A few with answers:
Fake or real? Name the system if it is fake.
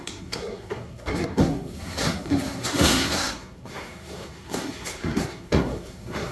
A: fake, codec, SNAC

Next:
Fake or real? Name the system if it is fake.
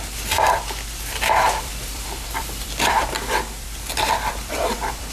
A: fake, vocoder, BigVGAN v2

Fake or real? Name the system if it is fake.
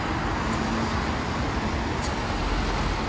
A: real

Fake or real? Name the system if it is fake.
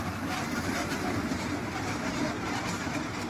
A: fake, vocoder, BigVGAN v2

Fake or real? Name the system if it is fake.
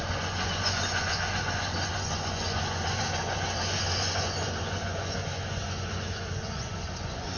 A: fake, vocoder, Vocos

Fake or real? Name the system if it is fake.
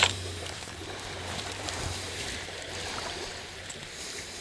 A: fake, vocoder, BigVGAN v2